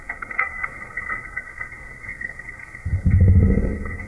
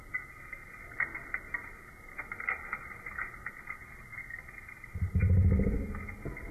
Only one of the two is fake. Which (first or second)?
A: first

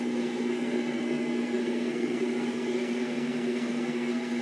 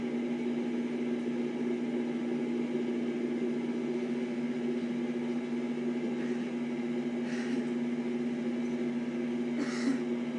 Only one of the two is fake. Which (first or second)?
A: first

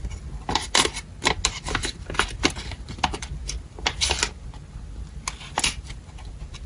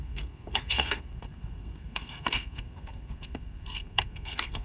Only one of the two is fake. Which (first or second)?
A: second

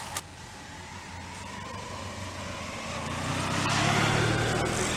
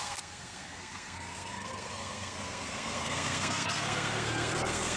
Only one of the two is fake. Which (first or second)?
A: second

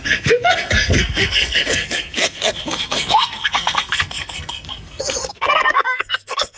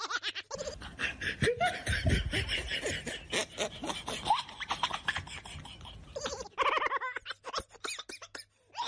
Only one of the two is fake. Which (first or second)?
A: first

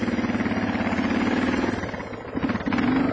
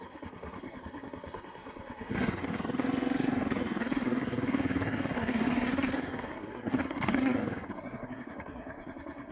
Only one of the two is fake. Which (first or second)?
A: second